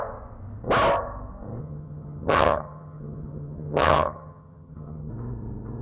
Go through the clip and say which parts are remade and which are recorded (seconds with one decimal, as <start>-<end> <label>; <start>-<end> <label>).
0.0-1.6 recorded; 1.6-5.1 remade; 5.1-5.8 recorded